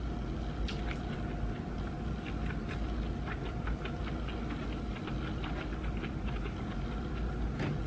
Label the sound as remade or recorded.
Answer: recorded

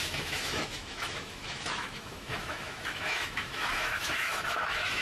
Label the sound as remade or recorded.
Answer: remade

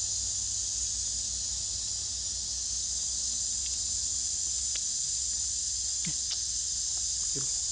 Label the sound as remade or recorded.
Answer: recorded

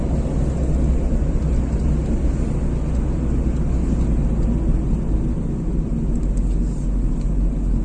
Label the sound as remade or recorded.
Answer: recorded